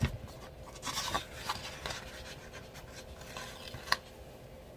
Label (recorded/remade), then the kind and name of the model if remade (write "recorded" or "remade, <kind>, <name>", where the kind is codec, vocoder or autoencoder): recorded